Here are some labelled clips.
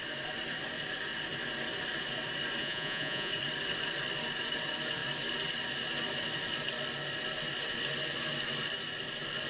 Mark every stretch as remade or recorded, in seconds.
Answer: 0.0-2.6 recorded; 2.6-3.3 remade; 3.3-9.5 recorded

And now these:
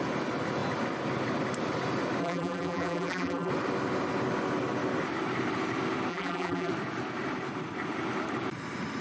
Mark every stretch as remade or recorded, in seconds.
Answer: 0.0-2.2 recorded; 2.2-3.5 remade; 3.5-6.1 recorded; 6.1-6.7 remade; 6.7-9.0 recorded

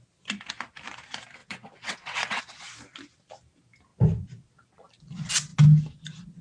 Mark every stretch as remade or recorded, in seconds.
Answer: 0.0-1.4 recorded; 1.4-2.4 remade; 2.4-6.4 recorded

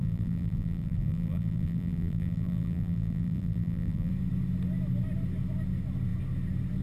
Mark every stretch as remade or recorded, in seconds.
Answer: 0.0-4.1 remade; 4.1-6.8 recorded

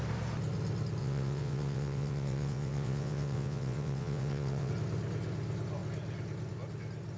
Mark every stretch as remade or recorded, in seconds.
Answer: 0.0-1.0 recorded; 1.0-4.7 remade; 4.7-7.2 recorded

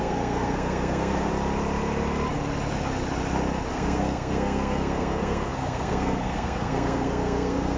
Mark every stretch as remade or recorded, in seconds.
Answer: 0.0-1.3 remade; 1.3-3.7 recorded; 3.7-7.8 remade

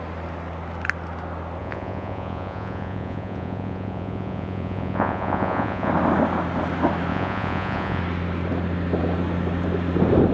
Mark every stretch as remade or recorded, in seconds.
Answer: 0.0-1.6 recorded; 1.6-5.9 remade; 5.9-7.1 recorded; 7.1-8.0 remade; 8.0-10.3 recorded

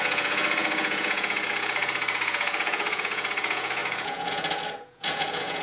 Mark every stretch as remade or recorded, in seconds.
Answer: 0.0-5.6 remade